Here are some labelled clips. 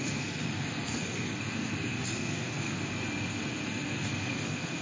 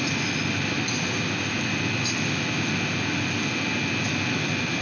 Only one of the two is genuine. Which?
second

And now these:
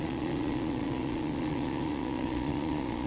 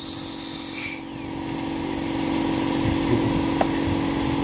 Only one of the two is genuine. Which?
second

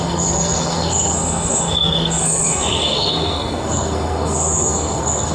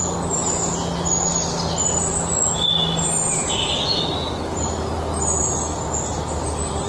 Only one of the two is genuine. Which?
second